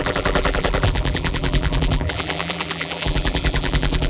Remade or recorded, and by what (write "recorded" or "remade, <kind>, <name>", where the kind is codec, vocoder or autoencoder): remade, vocoder, BigVGAN v2